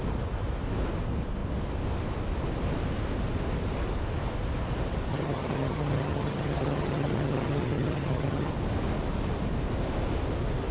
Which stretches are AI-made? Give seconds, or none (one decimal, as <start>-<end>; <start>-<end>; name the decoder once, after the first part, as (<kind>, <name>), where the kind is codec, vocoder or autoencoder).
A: 5.1-8.5 (vocoder, HiFi-GAN)